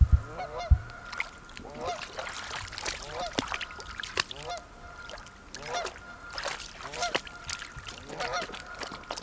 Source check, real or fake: real